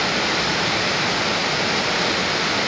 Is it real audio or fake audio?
real